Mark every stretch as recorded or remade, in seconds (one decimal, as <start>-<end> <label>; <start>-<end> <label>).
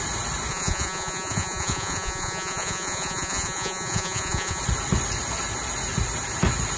0.0-0.5 recorded; 0.5-4.6 remade; 4.6-6.8 recorded